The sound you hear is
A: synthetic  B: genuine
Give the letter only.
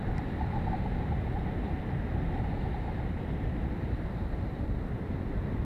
A